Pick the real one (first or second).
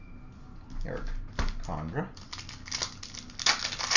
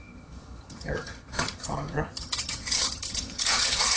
first